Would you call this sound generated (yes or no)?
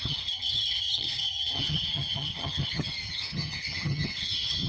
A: yes